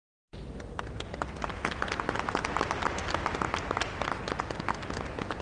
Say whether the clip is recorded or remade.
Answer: recorded